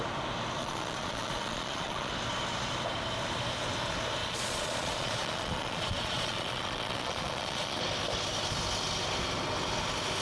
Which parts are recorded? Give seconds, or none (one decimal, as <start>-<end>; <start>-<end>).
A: 0.0-0.6; 2.1-4.2; 7.8-10.2